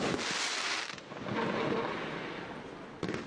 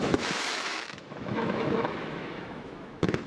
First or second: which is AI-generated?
second